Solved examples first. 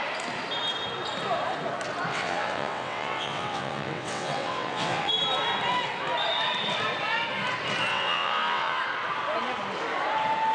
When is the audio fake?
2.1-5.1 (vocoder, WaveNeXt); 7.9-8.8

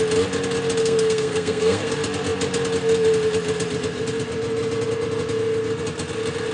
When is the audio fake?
0.8-1.9 (codec, SNAC)

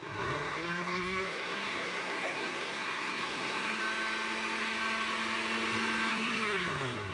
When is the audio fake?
0.0-3.8 (codec, SNAC); 6.1-7.1

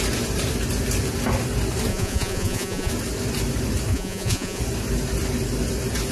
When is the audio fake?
1.9-2.9 (vocoder, Vocos); 3.9-4.6

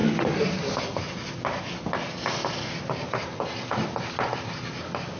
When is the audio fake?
none

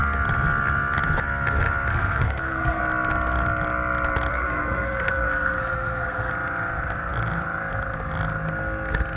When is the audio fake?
1.9-2.8 (codec, SNAC); 4.3-6.3

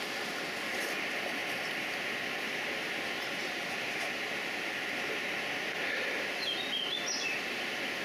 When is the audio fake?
none